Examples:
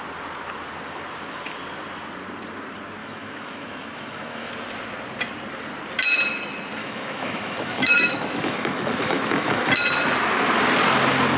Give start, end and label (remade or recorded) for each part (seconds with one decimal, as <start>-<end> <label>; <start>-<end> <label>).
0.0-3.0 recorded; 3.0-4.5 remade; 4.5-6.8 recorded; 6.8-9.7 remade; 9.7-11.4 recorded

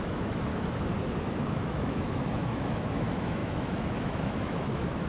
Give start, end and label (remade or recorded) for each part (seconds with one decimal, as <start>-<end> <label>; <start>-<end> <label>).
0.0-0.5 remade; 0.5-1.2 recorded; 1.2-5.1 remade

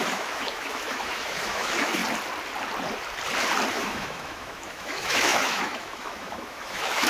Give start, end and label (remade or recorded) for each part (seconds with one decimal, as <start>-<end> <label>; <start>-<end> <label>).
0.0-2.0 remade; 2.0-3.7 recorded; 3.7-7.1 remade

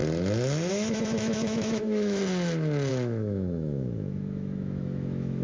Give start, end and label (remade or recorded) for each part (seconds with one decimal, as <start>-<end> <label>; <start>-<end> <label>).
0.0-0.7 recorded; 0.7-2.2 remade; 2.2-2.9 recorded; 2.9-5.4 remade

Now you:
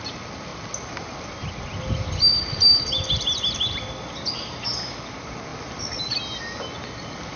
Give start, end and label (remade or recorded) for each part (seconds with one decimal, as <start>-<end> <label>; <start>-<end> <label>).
0.0-7.4 recorded

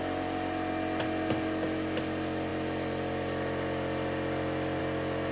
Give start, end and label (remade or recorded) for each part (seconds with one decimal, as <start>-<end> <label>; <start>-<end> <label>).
0.0-5.3 recorded

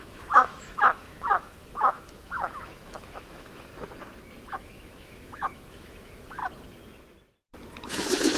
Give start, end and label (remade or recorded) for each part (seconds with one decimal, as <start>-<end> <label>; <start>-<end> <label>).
0.0-3.7 remade; 3.7-4.5 recorded; 4.5-6.4 remade; 6.4-7.9 recorded; 7.9-8.4 remade